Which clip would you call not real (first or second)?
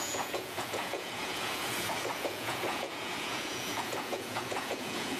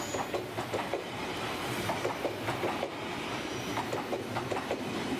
first